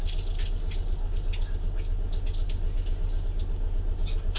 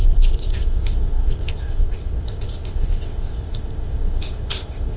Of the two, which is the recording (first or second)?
first